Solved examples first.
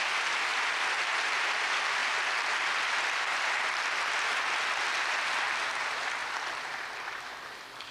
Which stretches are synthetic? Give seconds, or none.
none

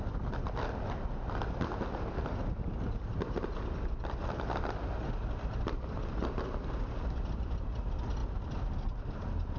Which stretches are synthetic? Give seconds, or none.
none

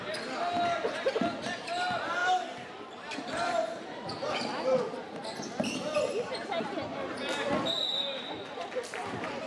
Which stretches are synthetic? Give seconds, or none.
2.2-4.3 (vocoder, BigVGAN v2)

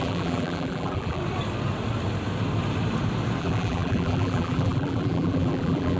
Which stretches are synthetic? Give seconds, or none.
0.0-1.2 (vocoder, BigVGAN v2); 3.4-6.0

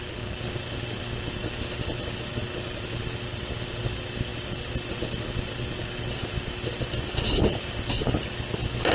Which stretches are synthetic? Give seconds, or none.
1.4-2.9 (vocoder, BigVGAN v2)

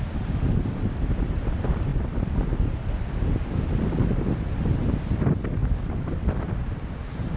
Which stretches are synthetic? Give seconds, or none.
5.6-6.4 (vocoder, BigVGAN v2)